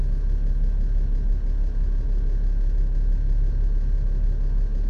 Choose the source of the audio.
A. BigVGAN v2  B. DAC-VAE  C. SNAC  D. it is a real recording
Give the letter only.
D